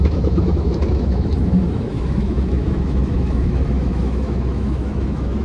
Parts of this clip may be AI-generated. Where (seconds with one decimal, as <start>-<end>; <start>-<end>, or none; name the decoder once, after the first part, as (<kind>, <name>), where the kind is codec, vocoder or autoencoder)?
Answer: 0.0-5.4 (autoencoder, DAC-VAE)